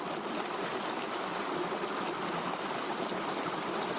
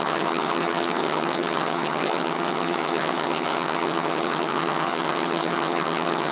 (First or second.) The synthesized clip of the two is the second